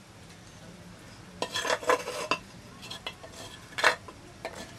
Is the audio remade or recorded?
recorded